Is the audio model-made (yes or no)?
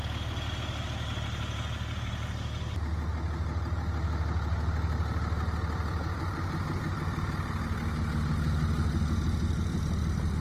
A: no